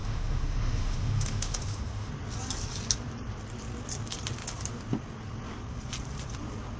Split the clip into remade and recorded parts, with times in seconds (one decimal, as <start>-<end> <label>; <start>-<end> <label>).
0.0-2.1 remade; 2.1-6.8 recorded